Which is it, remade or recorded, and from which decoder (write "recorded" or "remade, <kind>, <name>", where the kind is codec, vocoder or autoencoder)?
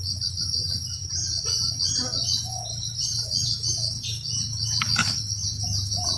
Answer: recorded